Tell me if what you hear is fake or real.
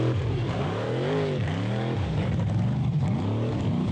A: fake